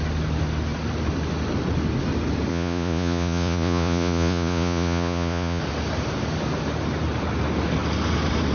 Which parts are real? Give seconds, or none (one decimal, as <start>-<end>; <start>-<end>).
0.0-2.5; 5.6-8.5